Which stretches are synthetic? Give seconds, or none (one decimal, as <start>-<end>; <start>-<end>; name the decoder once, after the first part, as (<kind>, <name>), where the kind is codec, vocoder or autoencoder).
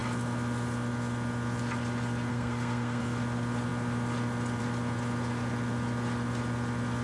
2.3-3.0 (codec, SNAC)